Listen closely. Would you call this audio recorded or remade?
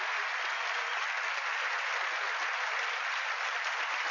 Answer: recorded